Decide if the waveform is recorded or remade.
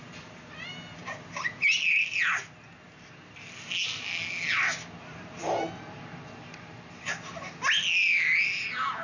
recorded